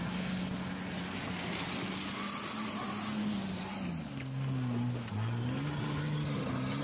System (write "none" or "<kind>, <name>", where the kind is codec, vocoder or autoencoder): none